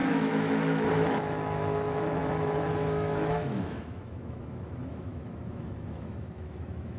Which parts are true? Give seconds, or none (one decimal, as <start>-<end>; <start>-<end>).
none